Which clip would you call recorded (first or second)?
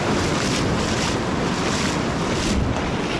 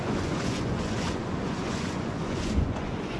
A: first